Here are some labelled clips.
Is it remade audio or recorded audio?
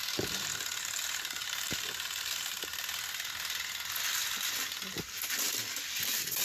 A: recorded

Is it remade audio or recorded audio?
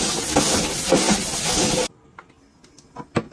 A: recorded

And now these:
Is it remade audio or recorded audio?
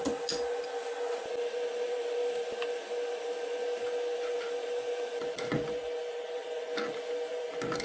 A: recorded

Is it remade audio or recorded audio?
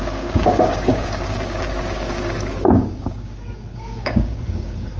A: remade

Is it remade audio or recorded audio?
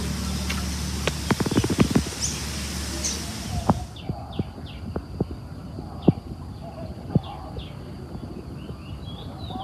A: recorded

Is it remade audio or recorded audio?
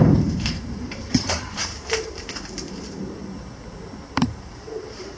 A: remade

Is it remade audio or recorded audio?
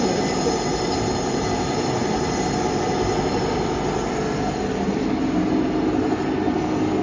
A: recorded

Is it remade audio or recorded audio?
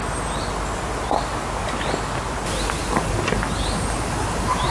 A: recorded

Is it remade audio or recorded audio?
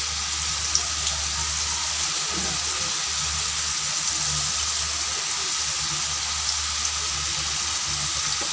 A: recorded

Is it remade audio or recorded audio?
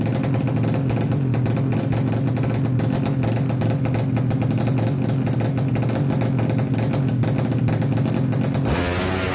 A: recorded